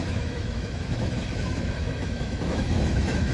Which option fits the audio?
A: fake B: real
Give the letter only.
A